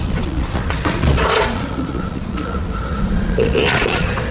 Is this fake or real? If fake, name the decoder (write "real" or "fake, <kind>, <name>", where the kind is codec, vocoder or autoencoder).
fake, vocoder, Vocos